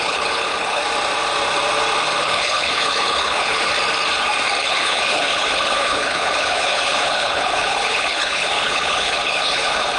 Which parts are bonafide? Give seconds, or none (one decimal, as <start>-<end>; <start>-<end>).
0.8-2.2; 3.7-4.6